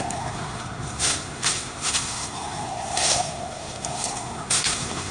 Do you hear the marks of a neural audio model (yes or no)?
yes